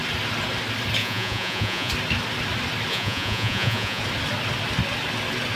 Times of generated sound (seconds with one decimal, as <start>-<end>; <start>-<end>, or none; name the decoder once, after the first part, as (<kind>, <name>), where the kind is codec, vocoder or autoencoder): 1.0-1.9 (vocoder, Vocos); 2.9-4.0